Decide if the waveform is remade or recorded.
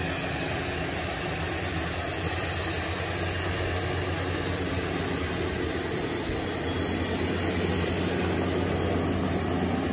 recorded